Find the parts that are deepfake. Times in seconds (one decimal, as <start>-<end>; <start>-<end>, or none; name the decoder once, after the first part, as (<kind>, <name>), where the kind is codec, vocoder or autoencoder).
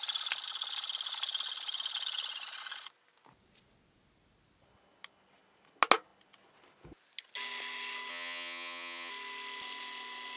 8.1-9.1 (vocoder, HiFi-GAN)